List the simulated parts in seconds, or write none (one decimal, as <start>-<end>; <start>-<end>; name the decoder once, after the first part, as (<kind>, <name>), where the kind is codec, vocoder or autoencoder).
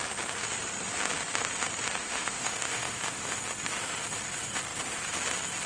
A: 2.0-3.4 (autoencoder, DAC-VAE)